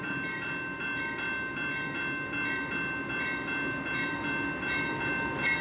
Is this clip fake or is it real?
real